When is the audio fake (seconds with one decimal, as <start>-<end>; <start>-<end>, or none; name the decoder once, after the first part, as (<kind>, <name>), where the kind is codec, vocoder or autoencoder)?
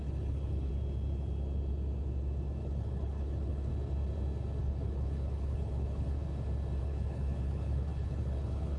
0.0-0.7 (codec, HILCodec); 2.6-3.7; 4.6-6.2; 6.8-8.8